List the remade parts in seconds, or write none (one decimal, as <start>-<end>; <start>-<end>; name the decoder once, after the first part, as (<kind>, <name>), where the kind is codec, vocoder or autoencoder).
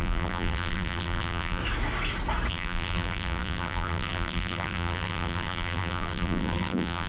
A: 0.0-1.6 (vocoder, BigVGAN v2); 2.5-7.1